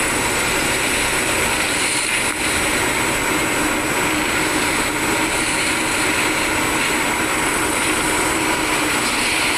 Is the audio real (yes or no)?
yes